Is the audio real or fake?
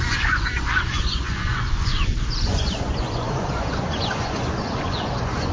fake